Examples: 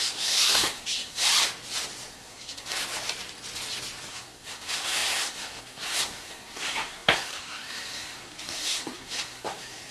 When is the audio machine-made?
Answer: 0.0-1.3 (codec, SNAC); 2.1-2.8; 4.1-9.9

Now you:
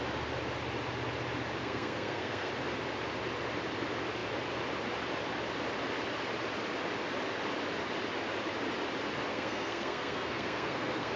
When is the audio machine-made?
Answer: 1.6-2.5 (codec, SNAC); 9.3-11.2

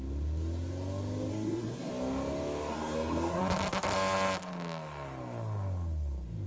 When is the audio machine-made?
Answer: 1.3-1.9 (codec, SNAC); 2.7-3.4

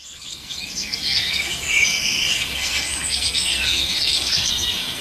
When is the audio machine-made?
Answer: 0.0-5.0 (codec, SNAC)

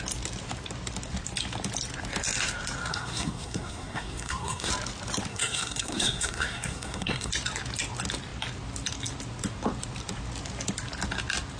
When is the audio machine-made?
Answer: 2.9-4.7 (codec, SNAC); 5.3-7.3

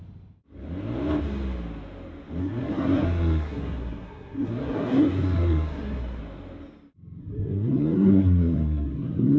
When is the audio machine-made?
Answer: 2.4-6.2 (codec, SNAC); 7.2-9.4

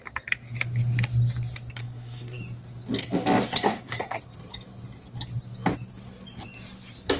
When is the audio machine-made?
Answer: 1.8-2.4 (codec, SNAC); 3.5-4.2

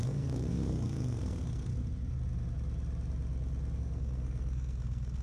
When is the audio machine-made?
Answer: 0.0-1.7 (codec, SNAC); 3.8-5.2